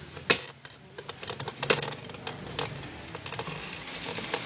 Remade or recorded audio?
recorded